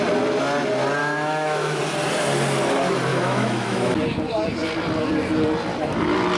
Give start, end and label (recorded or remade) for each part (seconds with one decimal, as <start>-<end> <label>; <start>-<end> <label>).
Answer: 0.0-1.0 recorded; 1.0-1.8 remade; 1.8-3.1 recorded; 3.1-3.9 remade; 3.9-6.4 recorded